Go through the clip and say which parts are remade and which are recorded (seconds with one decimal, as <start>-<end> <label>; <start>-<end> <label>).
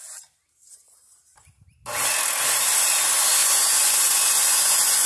0.0-3.4 recorded; 3.4-5.1 remade